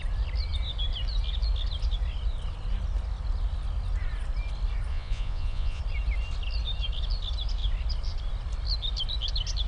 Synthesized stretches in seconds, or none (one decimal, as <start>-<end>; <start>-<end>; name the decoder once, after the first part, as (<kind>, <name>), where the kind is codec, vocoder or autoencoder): 4.9-5.8 (vocoder, Vocos)